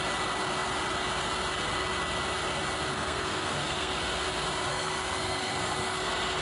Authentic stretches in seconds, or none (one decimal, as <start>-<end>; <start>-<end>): 0.0-2.9; 4.0-4.7